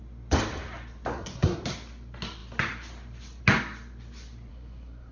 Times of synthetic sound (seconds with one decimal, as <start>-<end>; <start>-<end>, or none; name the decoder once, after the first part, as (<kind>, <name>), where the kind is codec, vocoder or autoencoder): 1.1-1.6 (codec, SNAC); 4.5-5.1